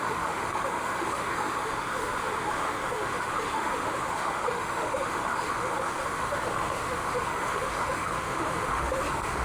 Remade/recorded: remade